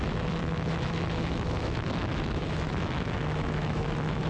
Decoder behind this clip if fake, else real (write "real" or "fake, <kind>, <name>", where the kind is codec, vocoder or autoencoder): fake, autoencoder, DAC-VAE